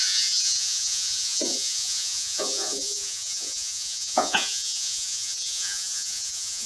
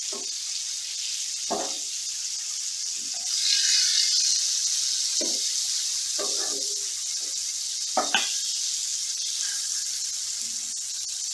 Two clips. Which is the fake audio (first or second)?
first